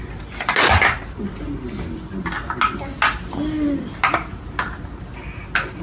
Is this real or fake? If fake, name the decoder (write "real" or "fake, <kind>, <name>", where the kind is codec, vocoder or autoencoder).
real